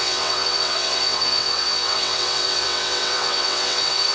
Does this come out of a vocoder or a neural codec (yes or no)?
yes